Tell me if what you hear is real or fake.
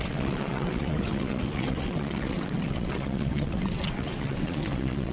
fake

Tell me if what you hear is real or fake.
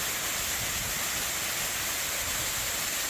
real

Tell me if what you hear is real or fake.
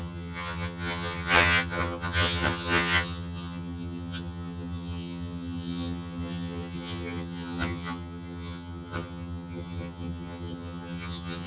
fake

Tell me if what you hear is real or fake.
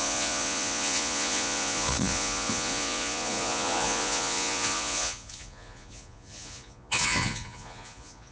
fake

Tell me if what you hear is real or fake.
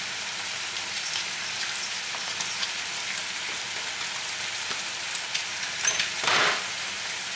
fake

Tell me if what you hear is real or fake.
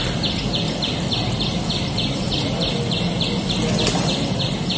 real